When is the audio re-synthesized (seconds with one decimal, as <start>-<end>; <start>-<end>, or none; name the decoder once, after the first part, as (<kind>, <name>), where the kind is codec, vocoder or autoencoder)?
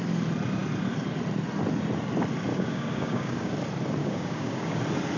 2.5-3.5 (codec, DAC); 4.0-4.8